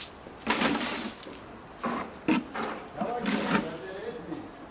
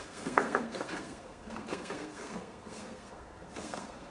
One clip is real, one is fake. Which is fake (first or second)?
second